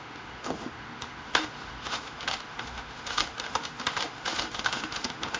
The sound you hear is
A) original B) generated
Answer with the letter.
B